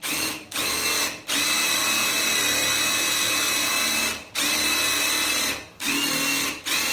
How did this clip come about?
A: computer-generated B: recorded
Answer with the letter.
B